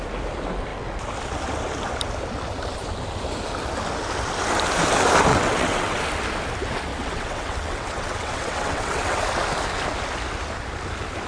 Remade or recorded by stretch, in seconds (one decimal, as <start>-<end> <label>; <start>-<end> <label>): 0.0-5.3 recorded; 5.3-6.0 remade; 6.0-6.9 recorded; 6.9-9.2 remade; 9.2-11.3 recorded